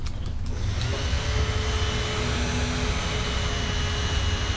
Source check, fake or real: real